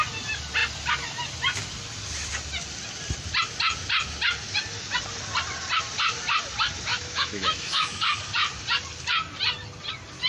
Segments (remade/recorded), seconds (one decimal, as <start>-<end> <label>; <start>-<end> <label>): 0.0-6.9 recorded; 6.9-8.0 remade; 8.0-10.3 recorded